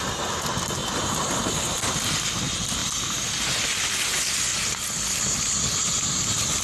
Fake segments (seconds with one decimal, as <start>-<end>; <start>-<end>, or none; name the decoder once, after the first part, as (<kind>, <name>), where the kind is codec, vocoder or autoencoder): 0.8-1.6 (vocoder, BigVGAN v2); 4.5-5.4